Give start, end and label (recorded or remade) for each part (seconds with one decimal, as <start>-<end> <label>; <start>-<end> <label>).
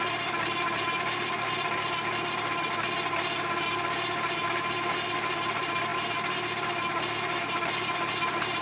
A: 0.0-8.6 recorded